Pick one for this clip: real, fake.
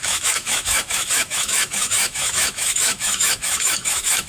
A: fake